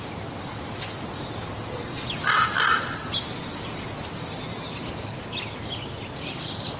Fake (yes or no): no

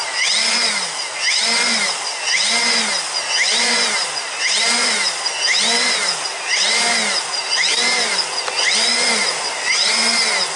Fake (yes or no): no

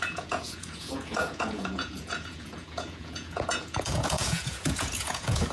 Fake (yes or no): yes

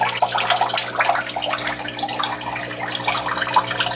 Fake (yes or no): no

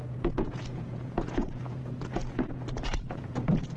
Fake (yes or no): yes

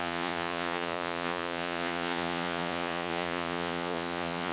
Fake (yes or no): yes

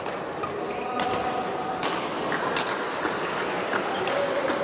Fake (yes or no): no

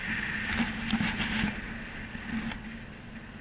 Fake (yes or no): no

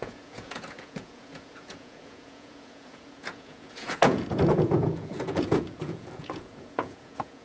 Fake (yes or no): yes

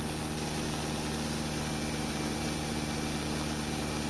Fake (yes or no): no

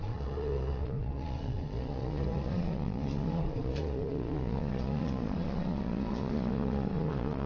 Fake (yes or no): yes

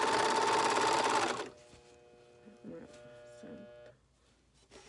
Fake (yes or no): no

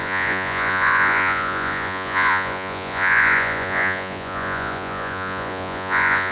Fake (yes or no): yes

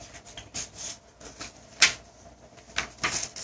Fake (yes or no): no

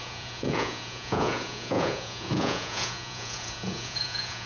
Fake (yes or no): yes